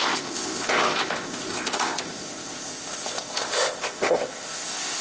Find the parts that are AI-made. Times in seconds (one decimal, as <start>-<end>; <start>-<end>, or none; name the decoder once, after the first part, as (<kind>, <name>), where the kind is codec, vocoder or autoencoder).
0.0-5.0 (codec, ZipCodec)